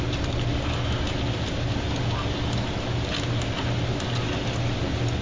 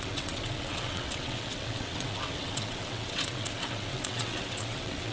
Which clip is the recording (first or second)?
first